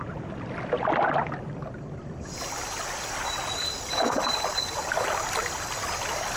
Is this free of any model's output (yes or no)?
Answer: yes